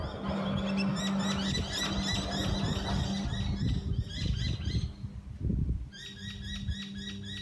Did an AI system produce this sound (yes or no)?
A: no